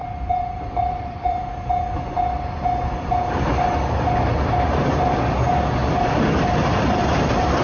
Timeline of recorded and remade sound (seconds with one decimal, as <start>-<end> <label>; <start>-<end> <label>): 0.0-1.4 remade; 1.4-5.8 recorded; 5.8-7.6 remade